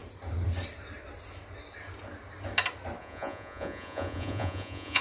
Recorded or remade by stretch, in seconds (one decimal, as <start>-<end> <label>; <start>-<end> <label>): 0.0-3.0 recorded; 3.0-5.0 remade